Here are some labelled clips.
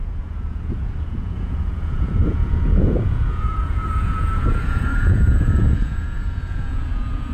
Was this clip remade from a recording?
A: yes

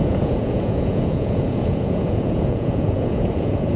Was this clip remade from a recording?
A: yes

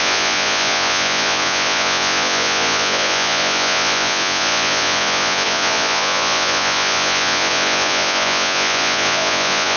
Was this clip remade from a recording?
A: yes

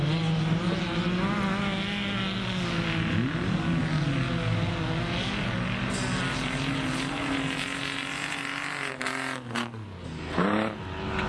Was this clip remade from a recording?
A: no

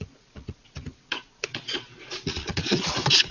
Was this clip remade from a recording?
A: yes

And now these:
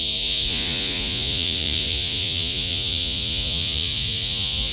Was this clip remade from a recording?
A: yes